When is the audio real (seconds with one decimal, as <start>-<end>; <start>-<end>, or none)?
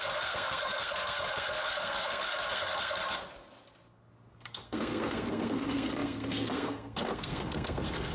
3.0-4.3